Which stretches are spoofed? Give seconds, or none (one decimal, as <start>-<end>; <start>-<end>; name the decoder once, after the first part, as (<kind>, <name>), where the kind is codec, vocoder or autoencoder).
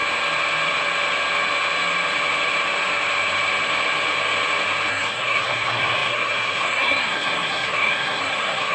4.9-8.7 (codec, SNAC)